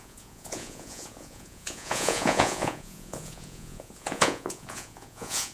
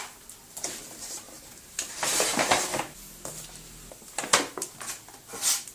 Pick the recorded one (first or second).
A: second